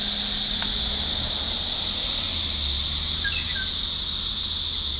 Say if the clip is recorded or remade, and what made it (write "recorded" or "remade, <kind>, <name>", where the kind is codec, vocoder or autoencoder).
recorded